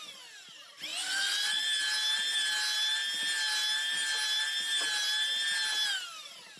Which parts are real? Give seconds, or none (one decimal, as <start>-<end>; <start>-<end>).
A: 0.0-0.9; 1.6-6.6